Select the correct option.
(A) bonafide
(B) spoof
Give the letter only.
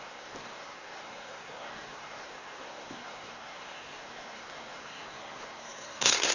B